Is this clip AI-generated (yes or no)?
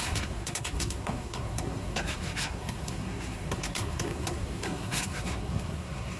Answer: yes